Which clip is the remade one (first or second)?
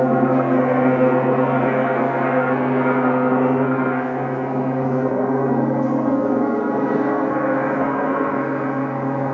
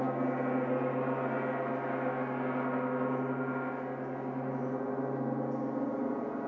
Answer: first